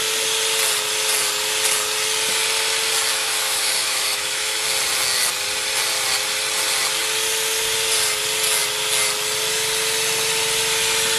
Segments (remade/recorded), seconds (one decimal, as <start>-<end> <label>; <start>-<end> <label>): 0.0-3.1 recorded; 3.1-4.6 remade; 4.6-11.2 recorded